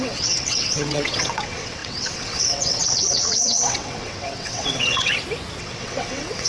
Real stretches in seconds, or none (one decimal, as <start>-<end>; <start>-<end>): 5.1-5.6